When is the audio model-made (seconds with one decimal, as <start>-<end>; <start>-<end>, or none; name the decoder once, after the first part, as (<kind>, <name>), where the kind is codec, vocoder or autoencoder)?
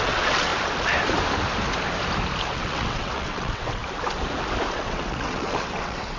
0.0-0.5 (vocoder, WaveNeXt); 2.5-3.8; 4.7-6.2